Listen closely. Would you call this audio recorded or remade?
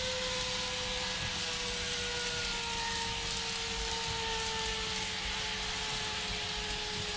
recorded